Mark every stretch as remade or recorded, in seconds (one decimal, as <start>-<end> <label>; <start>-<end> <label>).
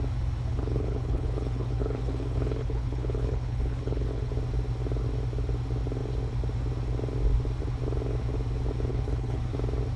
0.0-0.5 recorded; 0.5-4.3 remade; 4.3-8.9 recorded; 8.9-9.4 remade; 9.4-10.0 recorded